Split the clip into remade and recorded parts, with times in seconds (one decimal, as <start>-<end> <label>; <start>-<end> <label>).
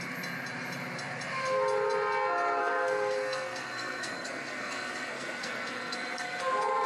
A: 0.0-2.6 recorded; 2.6-6.4 remade; 6.4-6.9 recorded